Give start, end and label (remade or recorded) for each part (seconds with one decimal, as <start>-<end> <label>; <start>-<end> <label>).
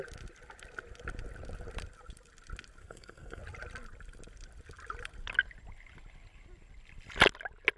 0.0-2.8 recorded; 2.8-3.4 remade; 3.4-7.8 recorded